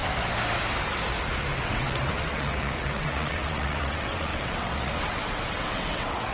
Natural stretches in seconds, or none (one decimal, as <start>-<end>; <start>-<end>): 0.0-1.6